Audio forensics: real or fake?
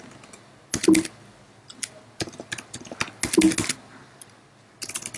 real